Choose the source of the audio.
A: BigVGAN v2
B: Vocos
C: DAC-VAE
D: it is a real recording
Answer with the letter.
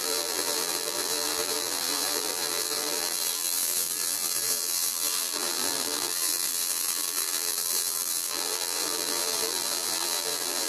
A